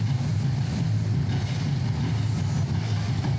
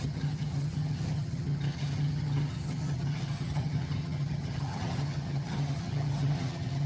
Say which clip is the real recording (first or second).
first